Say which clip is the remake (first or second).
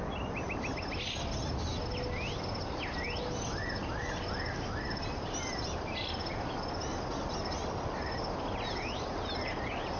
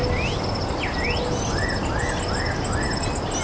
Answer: first